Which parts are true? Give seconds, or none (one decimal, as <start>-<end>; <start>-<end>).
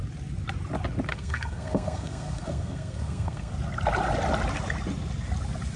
0.0-1.1; 3.5-5.8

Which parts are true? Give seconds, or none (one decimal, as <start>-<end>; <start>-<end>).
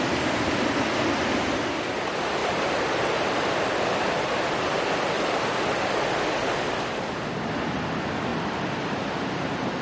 0.0-2.4; 3.5-8.3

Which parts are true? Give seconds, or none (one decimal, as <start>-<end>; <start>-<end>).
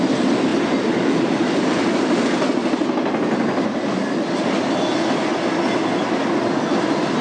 0.0-7.2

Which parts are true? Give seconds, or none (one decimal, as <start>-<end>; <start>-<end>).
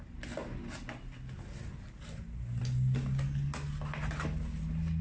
0.0-5.0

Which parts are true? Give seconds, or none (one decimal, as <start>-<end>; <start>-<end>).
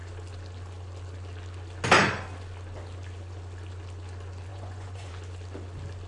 0.0-4.5; 5.1-6.1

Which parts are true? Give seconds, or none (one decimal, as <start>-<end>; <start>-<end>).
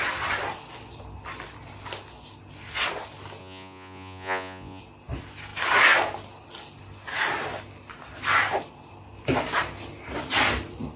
0.0-3.4; 4.8-11.0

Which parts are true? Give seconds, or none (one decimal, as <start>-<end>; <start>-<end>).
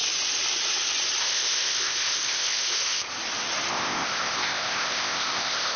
0.0-1.2; 3.1-3.7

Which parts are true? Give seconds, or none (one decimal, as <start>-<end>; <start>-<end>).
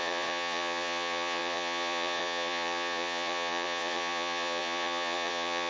none